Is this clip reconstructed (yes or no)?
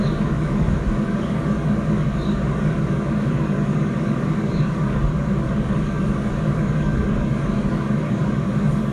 yes